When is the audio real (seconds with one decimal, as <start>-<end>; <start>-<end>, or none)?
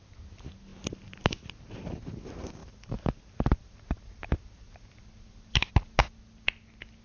0.0-0.7; 1.7-2.6; 5.7-7.0